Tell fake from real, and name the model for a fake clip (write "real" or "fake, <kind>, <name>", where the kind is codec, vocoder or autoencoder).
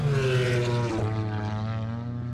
real